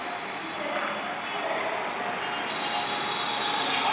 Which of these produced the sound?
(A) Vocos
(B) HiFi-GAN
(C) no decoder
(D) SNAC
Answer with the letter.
C